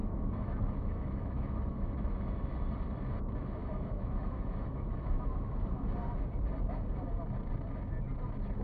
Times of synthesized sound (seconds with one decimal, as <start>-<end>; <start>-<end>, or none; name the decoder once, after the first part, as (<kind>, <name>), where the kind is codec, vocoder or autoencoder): 0.0-2.4 (autoencoder, DAC-VAE); 3.6-5.5